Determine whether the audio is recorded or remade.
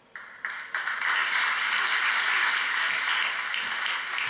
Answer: recorded